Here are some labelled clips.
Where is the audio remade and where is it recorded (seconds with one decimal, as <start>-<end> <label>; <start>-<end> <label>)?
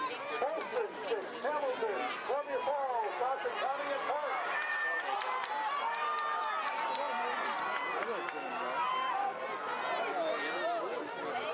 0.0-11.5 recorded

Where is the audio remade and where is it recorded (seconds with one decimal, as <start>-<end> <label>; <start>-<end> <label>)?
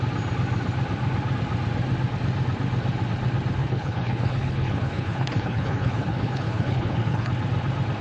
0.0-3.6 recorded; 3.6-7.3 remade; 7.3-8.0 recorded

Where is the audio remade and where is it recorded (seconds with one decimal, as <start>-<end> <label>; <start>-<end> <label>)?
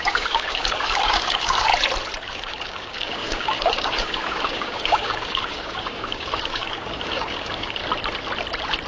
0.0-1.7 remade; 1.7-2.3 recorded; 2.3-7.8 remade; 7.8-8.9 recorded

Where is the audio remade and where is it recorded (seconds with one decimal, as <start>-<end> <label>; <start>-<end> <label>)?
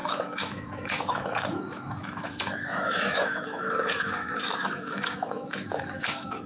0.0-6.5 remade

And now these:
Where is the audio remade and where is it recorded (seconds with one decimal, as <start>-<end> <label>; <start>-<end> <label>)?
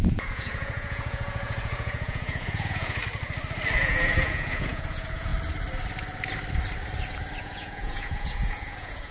0.0-3.0 remade; 3.0-3.8 recorded; 3.8-5.3 remade; 5.3-7.4 recorded; 7.4-9.1 remade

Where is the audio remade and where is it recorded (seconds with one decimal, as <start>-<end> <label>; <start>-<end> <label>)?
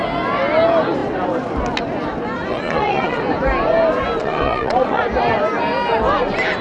0.0-2.5 recorded; 2.5-3.2 remade; 3.2-4.2 recorded; 4.2-5.0 remade; 5.0-6.6 recorded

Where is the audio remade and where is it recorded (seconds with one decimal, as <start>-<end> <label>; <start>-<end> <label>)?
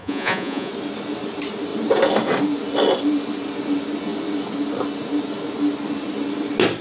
0.0-0.7 remade; 0.7-6.8 recorded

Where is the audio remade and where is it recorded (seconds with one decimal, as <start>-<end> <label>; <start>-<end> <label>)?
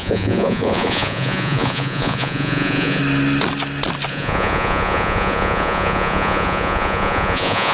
0.0-3.0 remade; 3.0-4.1 recorded; 4.1-7.7 remade